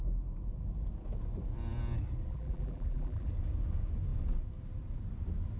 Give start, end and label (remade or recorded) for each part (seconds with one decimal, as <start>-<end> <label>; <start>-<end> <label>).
0.0-2.3 recorded; 2.3-3.3 remade; 3.3-5.6 recorded